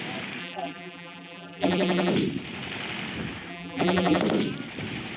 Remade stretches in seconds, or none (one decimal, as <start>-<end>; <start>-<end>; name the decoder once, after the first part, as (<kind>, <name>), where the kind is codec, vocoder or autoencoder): 0.4-2.1 (vocoder, BigVGAN v2); 3.5-4.2